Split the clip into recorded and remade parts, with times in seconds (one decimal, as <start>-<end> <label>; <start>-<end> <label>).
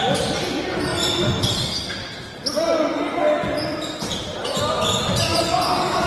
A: 0.0-6.1 recorded